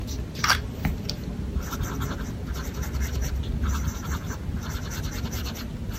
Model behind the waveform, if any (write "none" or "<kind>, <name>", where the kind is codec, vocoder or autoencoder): none